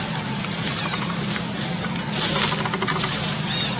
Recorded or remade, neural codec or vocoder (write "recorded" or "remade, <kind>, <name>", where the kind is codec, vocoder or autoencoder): recorded